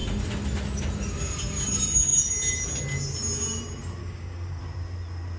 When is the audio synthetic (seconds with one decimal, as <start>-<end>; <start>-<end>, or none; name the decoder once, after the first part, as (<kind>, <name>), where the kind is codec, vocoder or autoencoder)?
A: 4.0-4.6 (codec, DAC)